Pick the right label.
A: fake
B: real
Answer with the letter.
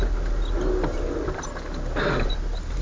B